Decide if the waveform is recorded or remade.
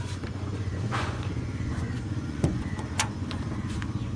remade